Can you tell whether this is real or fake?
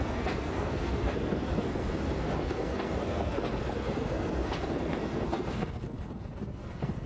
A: fake